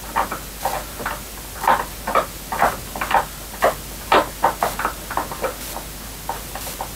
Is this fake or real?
real